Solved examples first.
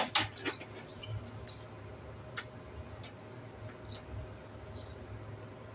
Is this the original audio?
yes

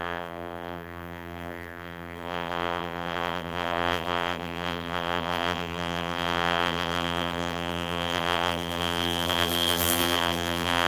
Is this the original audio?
no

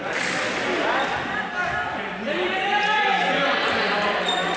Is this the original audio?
yes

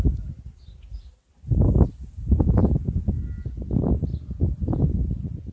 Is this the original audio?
yes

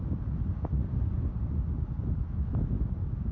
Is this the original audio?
yes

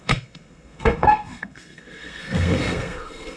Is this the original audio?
no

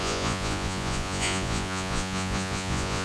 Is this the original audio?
no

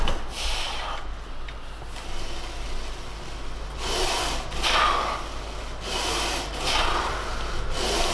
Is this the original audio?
yes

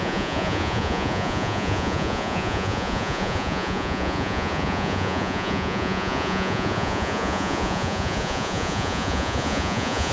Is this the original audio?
no